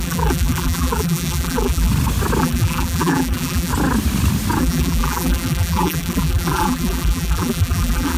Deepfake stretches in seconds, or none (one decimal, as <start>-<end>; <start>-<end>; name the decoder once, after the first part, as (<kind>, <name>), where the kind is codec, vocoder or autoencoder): 0.0-1.9 (vocoder, BigVGAN v2); 2.4-3.7; 4.6-8.2